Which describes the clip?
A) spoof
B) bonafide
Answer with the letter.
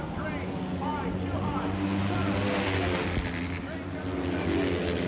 B